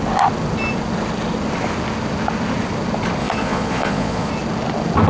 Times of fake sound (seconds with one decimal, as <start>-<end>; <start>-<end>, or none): 3.2-4.3